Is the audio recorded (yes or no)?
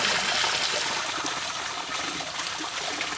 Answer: yes